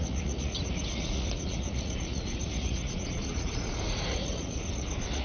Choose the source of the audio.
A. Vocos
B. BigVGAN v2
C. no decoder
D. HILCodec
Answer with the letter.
A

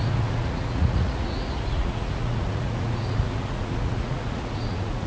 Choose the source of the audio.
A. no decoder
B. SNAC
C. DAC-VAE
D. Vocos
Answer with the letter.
D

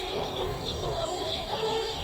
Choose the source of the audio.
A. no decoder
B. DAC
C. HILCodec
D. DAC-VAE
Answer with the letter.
B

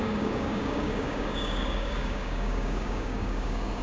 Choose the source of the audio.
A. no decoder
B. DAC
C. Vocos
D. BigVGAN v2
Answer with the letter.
B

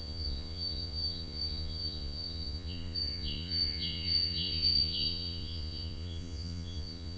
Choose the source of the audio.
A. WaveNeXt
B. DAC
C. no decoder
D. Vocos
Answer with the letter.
D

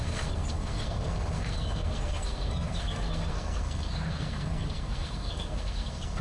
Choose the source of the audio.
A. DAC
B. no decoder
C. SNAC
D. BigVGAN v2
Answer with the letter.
C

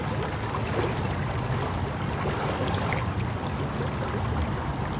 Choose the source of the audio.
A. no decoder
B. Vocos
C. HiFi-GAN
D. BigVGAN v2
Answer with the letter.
A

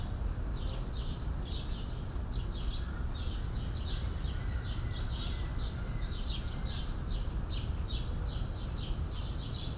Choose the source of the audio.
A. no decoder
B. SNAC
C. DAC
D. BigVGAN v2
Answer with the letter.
A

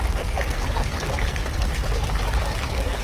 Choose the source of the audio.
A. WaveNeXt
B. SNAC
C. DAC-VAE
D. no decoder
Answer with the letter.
B